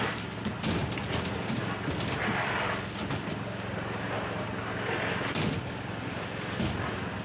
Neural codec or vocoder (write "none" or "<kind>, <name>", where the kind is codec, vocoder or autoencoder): none